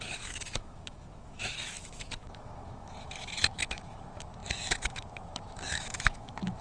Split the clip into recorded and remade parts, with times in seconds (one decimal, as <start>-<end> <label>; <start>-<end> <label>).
0.0-6.6 remade